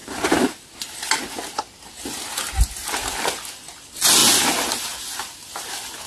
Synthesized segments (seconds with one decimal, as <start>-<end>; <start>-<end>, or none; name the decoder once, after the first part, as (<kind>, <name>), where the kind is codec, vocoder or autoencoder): none